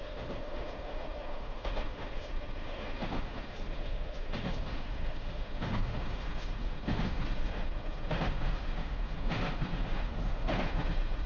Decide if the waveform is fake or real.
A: fake